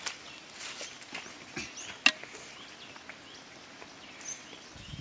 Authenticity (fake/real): real